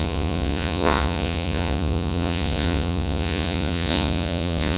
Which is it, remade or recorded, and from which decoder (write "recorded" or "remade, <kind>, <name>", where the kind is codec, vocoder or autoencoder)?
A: remade, vocoder, Vocos